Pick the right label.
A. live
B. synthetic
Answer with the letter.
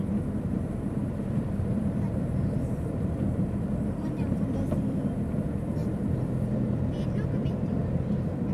B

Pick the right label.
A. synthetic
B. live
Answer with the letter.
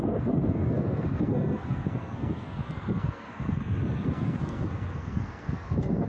A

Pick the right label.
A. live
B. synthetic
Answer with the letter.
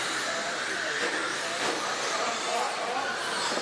B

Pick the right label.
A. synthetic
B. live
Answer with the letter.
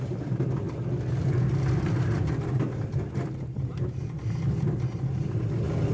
B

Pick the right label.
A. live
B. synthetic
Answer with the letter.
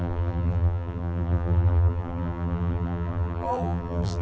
B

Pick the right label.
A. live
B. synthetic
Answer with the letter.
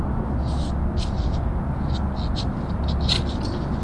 A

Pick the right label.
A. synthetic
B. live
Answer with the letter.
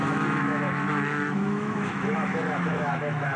A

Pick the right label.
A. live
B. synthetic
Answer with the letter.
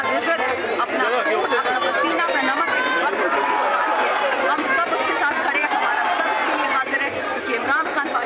A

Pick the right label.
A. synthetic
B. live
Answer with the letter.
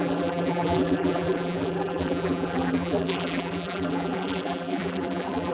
A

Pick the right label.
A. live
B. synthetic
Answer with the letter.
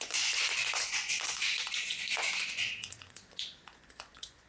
B